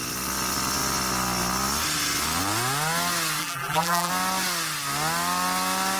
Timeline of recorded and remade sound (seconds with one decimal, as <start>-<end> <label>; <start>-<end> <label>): 0.0-3.4 recorded; 3.4-4.1 remade; 4.1-6.0 recorded